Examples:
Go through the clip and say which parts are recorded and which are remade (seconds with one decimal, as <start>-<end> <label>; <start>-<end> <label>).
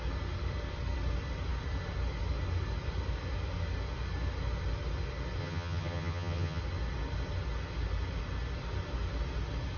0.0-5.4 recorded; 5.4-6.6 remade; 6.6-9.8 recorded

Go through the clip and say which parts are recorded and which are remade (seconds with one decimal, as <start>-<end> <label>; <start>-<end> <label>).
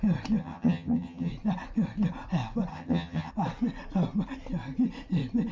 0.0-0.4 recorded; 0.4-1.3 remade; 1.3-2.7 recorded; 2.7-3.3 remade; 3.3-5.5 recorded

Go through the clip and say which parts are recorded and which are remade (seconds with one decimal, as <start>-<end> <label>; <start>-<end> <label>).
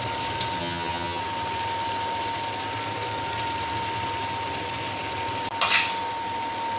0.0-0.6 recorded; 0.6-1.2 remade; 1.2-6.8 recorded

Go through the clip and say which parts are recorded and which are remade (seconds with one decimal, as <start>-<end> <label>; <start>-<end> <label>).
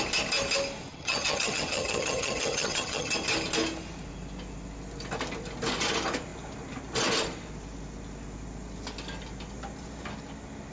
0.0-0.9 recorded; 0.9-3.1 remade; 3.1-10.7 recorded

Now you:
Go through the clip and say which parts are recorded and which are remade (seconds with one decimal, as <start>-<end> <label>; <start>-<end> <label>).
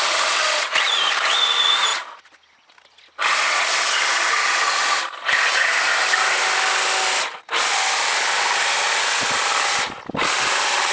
0.0-10.9 recorded